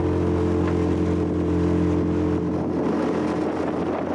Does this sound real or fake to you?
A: real